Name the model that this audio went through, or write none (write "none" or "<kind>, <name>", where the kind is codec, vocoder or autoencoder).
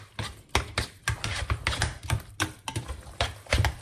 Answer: vocoder, BigVGAN v2